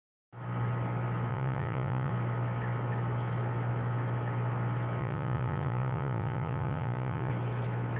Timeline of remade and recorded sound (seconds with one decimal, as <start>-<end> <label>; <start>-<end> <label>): 0.0-1.3 recorded; 1.3-2.1 remade; 2.1-5.0 recorded; 5.0-7.3 remade; 7.3-8.0 recorded